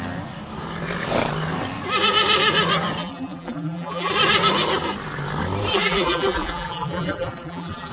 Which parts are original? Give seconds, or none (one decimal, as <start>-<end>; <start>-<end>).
0.0-3.0; 4.1-5.7